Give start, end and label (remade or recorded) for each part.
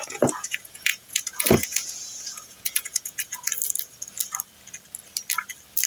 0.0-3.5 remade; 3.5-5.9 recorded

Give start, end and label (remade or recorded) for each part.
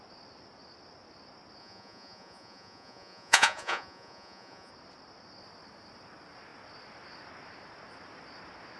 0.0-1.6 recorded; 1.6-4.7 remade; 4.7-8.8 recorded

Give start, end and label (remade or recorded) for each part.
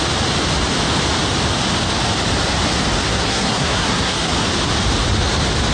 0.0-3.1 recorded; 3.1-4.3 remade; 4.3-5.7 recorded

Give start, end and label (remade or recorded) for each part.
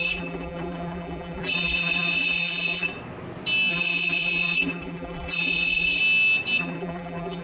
0.0-2.9 remade; 2.9-3.7 recorded; 3.7-6.0 remade; 6.0-6.6 recorded; 6.6-7.4 remade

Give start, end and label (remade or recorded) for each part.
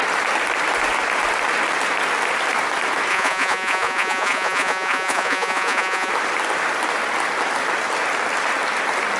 0.0-3.1 recorded; 3.1-6.1 remade; 6.1-9.2 recorded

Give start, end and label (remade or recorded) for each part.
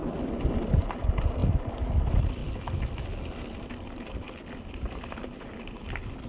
0.0-2.4 recorded; 2.4-6.3 remade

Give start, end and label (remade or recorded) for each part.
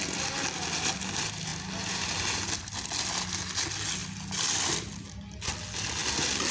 0.0-6.5 recorded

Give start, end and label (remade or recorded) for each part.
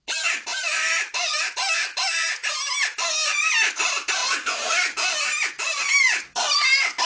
0.0-2.3 remade; 2.3-3.7 recorded; 3.7-4.2 remade; 4.2-5.8 recorded; 5.8-7.0 remade